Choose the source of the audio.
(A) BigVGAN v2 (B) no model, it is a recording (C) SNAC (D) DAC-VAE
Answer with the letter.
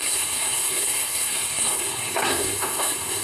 C